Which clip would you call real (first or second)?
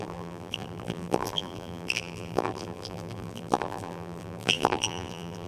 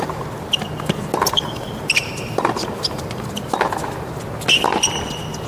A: second